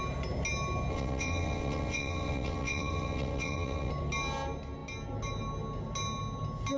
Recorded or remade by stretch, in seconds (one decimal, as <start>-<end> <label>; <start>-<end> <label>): 0.0-0.9 recorded; 0.9-3.9 remade; 3.9-6.8 recorded